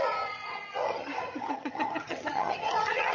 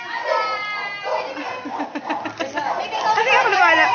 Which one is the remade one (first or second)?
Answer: first